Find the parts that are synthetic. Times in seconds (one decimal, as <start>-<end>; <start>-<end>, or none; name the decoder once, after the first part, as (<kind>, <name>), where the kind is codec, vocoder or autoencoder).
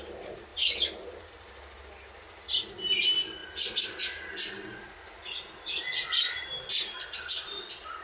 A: none